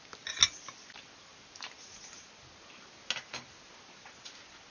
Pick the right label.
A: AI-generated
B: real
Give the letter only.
B